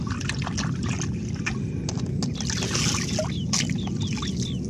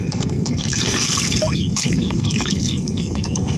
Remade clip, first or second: second